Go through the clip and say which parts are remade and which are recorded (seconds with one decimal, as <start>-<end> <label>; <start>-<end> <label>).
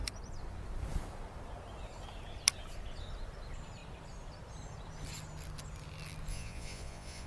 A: 0.0-6.3 recorded; 6.3-7.3 remade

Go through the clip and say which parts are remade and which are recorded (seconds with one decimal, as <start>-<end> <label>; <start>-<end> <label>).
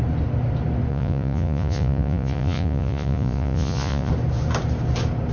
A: 0.0-0.9 recorded; 0.9-4.1 remade; 4.1-5.3 recorded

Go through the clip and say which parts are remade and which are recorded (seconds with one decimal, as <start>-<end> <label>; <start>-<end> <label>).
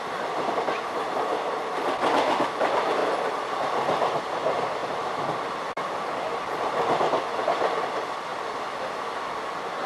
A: 0.0-9.9 recorded